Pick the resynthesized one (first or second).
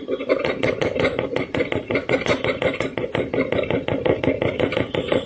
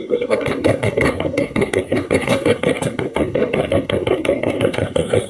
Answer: second